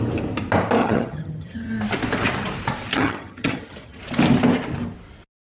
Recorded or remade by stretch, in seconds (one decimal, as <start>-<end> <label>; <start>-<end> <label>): 0.0-0.8 recorded; 0.8-1.7 remade; 1.7-2.9 recorded; 2.9-4.0 remade; 4.0-5.4 recorded